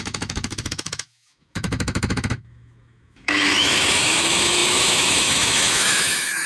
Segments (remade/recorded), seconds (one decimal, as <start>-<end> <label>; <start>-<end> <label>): 0.0-6.5 remade